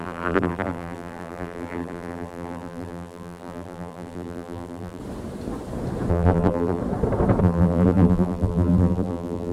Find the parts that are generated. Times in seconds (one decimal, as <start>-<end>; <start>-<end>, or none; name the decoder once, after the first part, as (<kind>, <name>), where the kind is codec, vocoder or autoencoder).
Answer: 0.0-5.0 (vocoder, BigVGAN v2); 6.1-6.8; 7.4-9.5